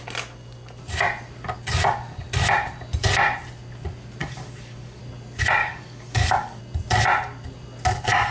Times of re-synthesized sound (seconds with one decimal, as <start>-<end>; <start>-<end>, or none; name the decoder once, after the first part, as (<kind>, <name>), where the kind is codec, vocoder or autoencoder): 4.2-5.0 (codec, DAC); 5.6-6.6